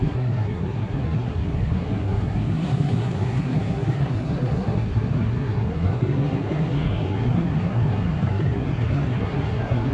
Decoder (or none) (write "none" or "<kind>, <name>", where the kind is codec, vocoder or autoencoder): codec, SNAC